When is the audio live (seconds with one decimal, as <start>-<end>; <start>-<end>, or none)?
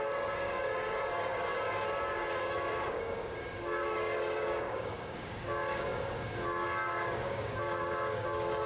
none